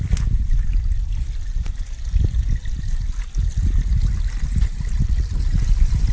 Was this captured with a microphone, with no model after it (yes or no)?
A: yes